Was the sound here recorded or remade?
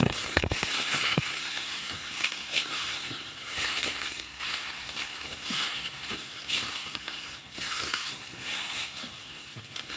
remade